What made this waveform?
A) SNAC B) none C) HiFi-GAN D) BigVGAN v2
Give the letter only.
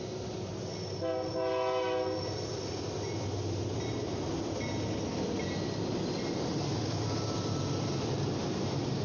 B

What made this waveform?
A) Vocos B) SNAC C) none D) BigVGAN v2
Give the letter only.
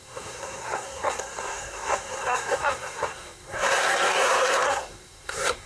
B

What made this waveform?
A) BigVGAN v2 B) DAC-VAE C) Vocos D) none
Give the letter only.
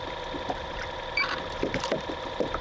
A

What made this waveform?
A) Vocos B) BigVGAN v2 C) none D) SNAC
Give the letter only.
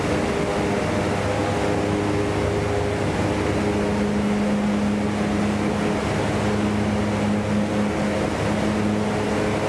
C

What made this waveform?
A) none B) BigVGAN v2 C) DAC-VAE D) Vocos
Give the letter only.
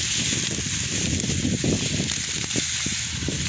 A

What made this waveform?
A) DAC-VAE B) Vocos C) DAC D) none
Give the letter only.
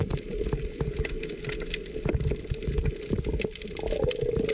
D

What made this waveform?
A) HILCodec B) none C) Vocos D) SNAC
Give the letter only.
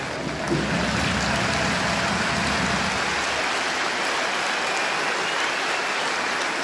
B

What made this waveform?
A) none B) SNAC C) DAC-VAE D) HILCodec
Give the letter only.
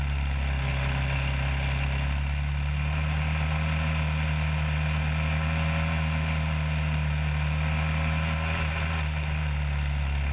A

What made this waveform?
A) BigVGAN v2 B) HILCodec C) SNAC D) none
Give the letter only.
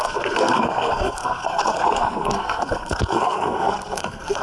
C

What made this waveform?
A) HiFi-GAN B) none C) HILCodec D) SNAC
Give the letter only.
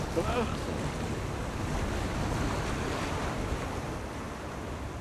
B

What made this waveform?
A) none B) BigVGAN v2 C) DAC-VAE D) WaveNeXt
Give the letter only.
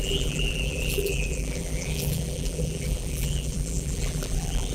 B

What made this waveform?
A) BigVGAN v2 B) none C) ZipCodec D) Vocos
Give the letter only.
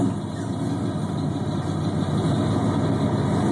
B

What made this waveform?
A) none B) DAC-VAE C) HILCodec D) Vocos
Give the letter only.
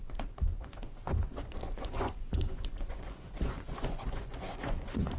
D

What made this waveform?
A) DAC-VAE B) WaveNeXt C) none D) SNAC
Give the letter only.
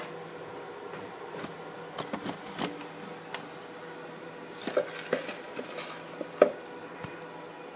C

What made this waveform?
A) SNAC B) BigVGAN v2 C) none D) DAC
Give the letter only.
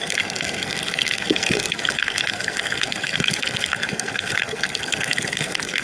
A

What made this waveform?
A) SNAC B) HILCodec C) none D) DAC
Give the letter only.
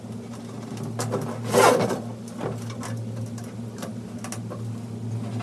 C